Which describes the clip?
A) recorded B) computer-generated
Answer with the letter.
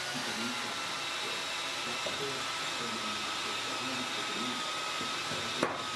A